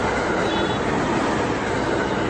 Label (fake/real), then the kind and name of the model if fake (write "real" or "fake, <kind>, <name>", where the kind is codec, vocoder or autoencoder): real